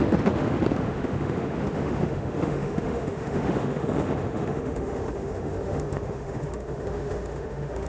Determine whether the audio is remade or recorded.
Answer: remade